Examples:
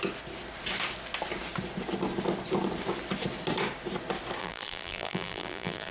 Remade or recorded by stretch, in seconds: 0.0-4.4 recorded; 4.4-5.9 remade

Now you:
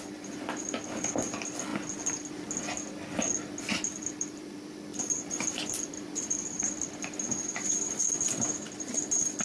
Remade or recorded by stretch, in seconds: 0.0-1.7 remade; 1.7-3.5 recorded; 3.5-9.4 remade

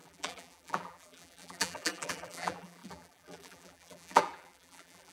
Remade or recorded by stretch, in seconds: 0.0-5.1 remade

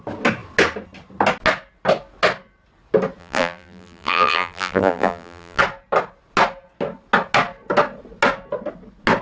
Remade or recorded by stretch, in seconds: 0.0-3.2 recorded; 3.2-5.6 remade; 5.6-9.2 recorded

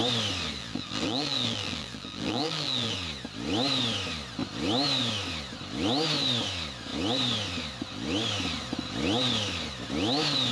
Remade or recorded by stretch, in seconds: 0.0-0.6 recorded; 0.6-2.9 remade; 2.9-10.5 recorded

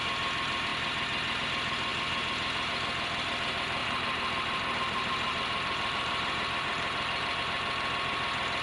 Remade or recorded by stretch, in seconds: 0.0-3.8 recorded; 3.8-7.4 remade; 7.4-8.6 recorded